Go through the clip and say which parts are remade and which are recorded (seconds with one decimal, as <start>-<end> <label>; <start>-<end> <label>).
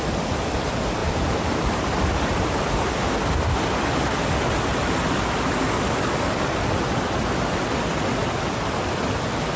0.0-1.0 recorded; 1.0-3.6 remade; 3.6-9.6 recorded